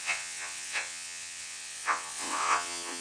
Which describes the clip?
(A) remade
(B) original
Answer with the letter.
A